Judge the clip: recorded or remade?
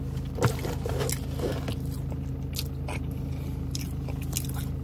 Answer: recorded